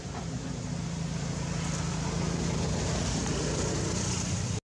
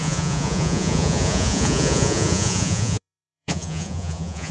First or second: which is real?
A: first